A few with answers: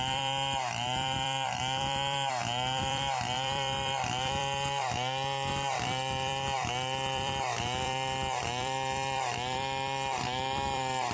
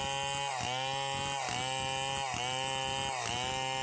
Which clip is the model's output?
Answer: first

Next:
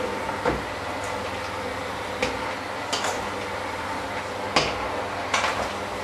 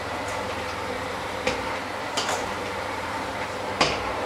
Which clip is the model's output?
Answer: second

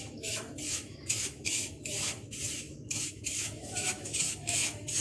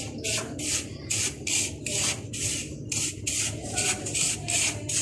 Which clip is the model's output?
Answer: first